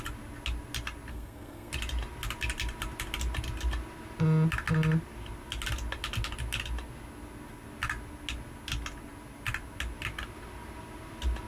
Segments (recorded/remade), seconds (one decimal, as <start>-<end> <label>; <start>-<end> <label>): 0.0-1.1 recorded; 1.1-1.7 remade; 1.7-11.5 recorded